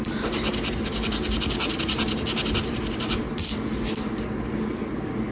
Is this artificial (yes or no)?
no